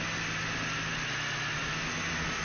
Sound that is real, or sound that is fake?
real